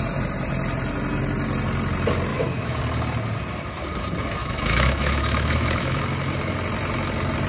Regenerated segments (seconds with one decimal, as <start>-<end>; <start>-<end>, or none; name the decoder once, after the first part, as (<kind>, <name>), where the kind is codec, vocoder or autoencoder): 2.3-2.8 (autoencoder, DAC-VAE); 4.4-6.0